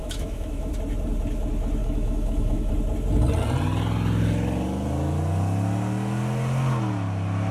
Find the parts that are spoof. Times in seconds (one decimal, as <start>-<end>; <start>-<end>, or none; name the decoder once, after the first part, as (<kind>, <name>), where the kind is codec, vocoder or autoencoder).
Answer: 0.0-0.7 (autoencoder, DAC-VAE); 1.8-2.7